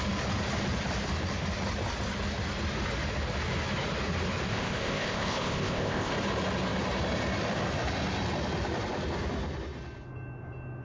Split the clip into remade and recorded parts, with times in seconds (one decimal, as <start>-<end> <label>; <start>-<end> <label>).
0.0-4.5 recorded; 4.5-6.1 remade; 6.1-10.8 recorded